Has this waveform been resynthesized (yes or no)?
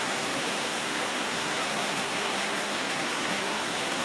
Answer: yes